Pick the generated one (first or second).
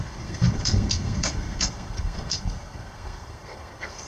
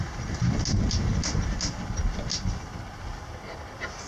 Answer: first